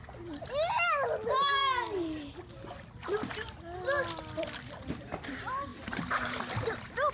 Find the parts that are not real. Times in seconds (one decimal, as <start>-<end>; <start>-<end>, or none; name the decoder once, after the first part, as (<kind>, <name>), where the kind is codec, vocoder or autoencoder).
none